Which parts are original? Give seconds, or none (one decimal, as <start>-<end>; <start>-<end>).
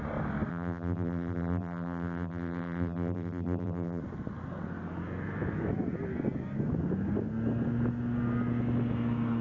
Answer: 0.0-0.5; 4.0-9.4